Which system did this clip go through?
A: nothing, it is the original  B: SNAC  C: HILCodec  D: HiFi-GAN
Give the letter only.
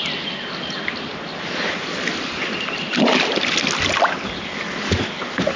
A